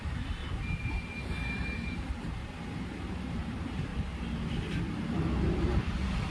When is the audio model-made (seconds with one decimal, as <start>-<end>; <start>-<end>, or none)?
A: 0.0-0.4; 0.9-2.4; 3.1-3.9; 5.0-6.3